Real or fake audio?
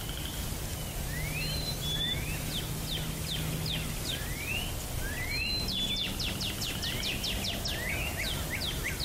real